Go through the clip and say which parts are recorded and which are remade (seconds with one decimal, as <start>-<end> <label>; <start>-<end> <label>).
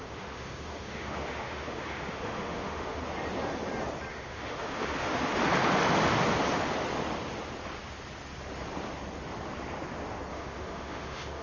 0.0-3.0 remade; 3.0-4.1 recorded; 4.1-5.3 remade; 5.3-10.3 recorded; 10.3-11.4 remade